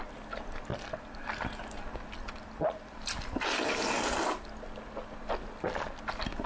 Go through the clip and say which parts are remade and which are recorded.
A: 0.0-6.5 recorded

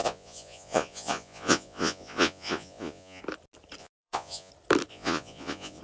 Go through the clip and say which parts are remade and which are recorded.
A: 0.0-3.2 remade; 3.2-3.8 recorded; 3.8-4.5 remade; 4.5-4.9 recorded; 4.9-5.8 remade

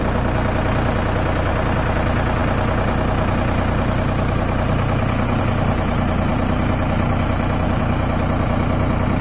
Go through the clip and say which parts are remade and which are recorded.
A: 0.0-9.2 recorded

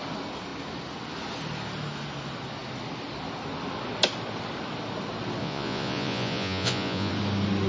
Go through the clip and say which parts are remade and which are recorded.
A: 0.0-5.4 recorded; 5.4-7.1 remade; 7.1-7.7 recorded

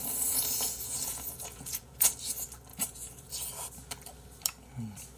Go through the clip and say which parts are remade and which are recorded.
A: 0.0-2.1 remade; 2.1-2.7 recorded; 2.7-3.5 remade; 3.5-5.2 recorded

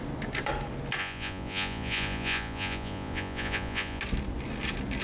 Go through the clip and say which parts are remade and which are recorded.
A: 0.0-1.0 recorded; 1.0-4.0 remade; 4.0-5.0 recorded

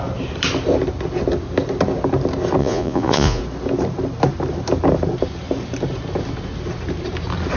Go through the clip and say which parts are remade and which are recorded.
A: 0.0-2.6 recorded; 2.6-3.4 remade; 3.4-7.6 recorded

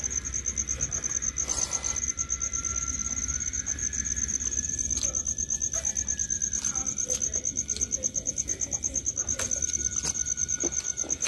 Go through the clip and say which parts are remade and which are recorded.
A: 0.0-11.3 recorded